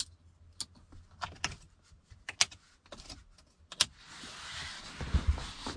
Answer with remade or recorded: recorded